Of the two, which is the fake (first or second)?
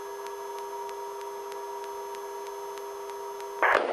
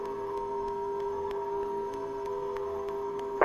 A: second